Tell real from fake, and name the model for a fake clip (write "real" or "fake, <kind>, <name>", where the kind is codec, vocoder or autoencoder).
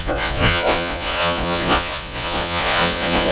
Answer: fake, vocoder, Vocos